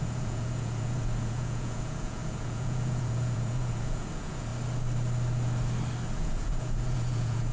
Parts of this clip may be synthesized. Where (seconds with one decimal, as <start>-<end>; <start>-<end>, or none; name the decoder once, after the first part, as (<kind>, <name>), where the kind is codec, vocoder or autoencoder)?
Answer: 0.0-4.5 (vocoder, Vocos); 6.2-7.5